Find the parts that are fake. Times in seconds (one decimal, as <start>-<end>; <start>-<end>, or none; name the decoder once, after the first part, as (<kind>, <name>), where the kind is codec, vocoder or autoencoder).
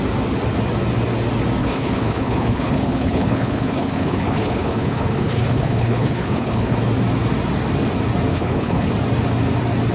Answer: 1.6-6.8 (codec, HILCodec); 8.3-8.9